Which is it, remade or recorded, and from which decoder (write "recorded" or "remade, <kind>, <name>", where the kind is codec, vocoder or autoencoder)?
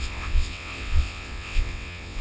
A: remade, vocoder, WaveNeXt